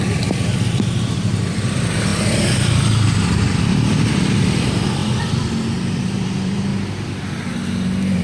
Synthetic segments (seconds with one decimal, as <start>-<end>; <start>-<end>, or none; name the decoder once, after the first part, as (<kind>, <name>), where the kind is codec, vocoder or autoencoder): 0.0-2.1 (vocoder, BigVGAN v2); 3.4-5.0; 5.9-6.7; 7.5-8.2